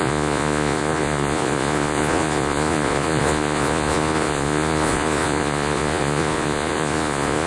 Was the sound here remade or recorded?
remade